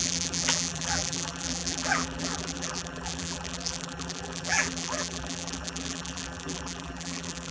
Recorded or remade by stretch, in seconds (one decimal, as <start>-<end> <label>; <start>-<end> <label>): 0.0-7.5 remade